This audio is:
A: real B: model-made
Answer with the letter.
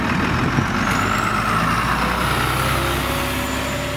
A